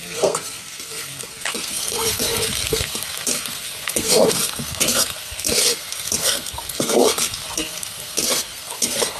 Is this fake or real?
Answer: fake